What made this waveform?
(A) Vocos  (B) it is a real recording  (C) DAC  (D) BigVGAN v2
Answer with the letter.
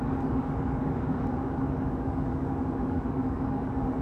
C